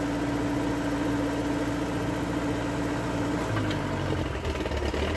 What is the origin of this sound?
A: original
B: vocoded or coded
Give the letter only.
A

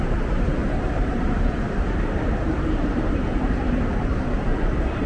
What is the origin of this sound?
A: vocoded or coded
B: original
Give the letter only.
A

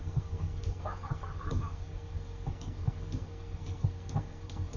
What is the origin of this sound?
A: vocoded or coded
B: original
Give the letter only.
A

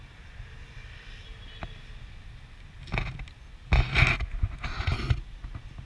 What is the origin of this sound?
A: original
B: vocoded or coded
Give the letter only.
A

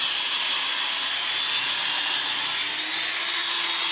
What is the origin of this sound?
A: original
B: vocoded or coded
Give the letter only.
A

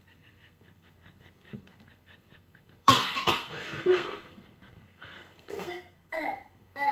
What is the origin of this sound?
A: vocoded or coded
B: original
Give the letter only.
A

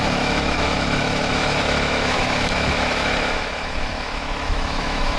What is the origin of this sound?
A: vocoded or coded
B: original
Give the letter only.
A